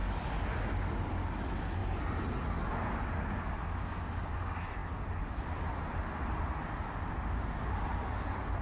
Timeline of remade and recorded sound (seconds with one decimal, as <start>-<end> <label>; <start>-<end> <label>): 0.0-8.6 recorded